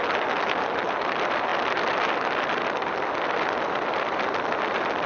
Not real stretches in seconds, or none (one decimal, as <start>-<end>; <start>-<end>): none